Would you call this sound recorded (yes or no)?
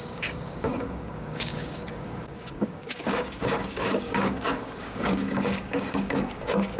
no